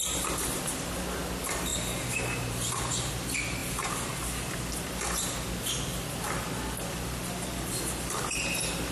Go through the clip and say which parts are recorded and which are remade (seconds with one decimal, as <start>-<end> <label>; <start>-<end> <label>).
0.0-1.7 recorded; 1.7-3.1 remade; 3.1-3.6 recorded; 3.6-4.1 remade; 4.1-8.9 recorded